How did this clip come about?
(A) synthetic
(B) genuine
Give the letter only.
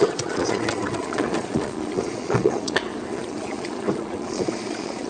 A